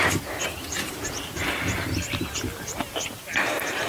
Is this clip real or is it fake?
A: fake